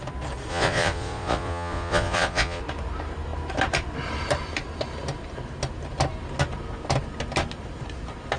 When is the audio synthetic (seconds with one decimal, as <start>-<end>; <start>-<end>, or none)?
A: 0.5-2.6